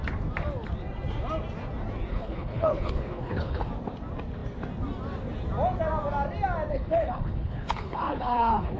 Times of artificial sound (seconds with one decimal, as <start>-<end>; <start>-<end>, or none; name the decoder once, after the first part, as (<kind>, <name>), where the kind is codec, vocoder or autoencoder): 2.1-3.7 (codec, HILCodec); 6.7-8.8